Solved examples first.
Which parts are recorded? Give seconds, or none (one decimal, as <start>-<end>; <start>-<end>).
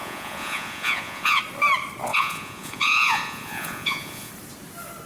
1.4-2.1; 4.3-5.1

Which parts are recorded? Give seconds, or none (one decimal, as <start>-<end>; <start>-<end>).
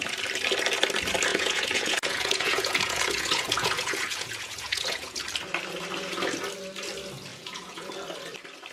0.0-1.3; 5.2-7.3; 7.9-8.7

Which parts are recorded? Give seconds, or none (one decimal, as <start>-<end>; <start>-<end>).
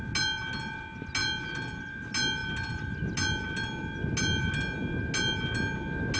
0.0-6.2